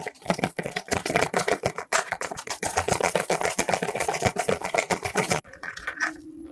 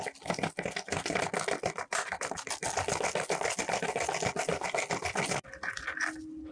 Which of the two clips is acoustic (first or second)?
second